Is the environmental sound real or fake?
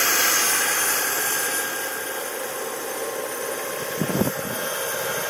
real